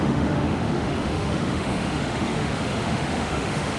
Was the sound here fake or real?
fake